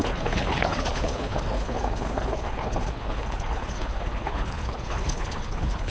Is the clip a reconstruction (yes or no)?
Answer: yes